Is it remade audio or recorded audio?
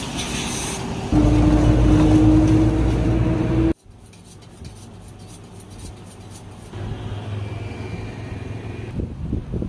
recorded